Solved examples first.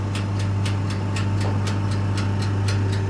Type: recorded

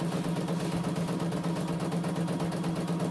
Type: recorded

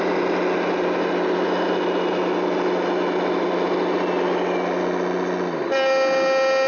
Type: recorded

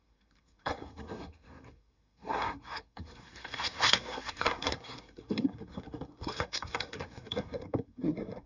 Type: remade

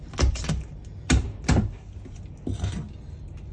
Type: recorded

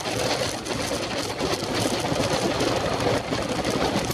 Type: recorded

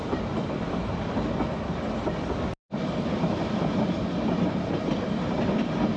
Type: recorded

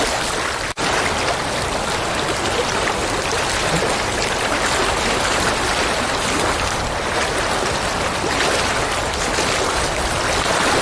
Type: recorded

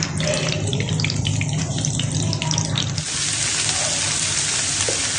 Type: recorded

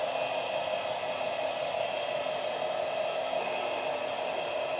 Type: recorded